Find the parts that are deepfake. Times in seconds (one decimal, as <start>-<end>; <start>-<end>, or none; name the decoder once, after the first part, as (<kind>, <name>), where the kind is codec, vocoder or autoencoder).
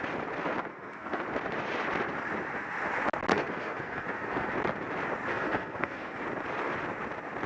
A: 0.7-1.2 (codec, SNAC); 3.3-4.5; 5.3-6.2